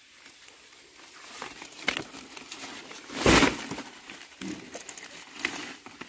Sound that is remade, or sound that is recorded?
recorded